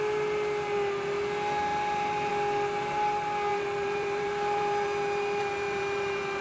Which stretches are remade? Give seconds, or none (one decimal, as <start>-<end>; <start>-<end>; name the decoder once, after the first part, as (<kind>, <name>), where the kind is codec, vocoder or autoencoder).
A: 1.7-2.3 (vocoder, BigVGAN v2); 3.5-6.4